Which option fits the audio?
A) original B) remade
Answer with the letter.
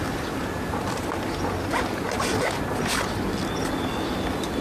A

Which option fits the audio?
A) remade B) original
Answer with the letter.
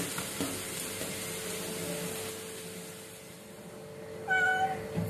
B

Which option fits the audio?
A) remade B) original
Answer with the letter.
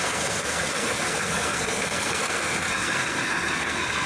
A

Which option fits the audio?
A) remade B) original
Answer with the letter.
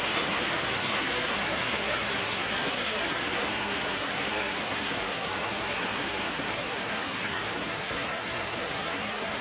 A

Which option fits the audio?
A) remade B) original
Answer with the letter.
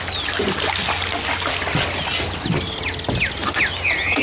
B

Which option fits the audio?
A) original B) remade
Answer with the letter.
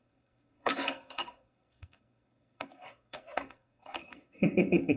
B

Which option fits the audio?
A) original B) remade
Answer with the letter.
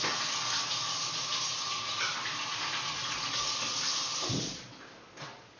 A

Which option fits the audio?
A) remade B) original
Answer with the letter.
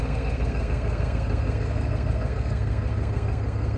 A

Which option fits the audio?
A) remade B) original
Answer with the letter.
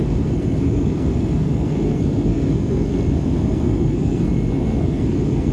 A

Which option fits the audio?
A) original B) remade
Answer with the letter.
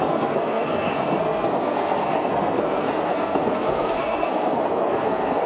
B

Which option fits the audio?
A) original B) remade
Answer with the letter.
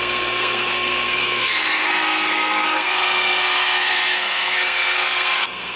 B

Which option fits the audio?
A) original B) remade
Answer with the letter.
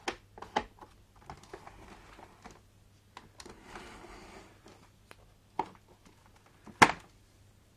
A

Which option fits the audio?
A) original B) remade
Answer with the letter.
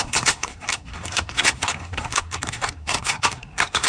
B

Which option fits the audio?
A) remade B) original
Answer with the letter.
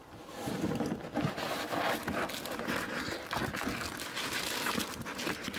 B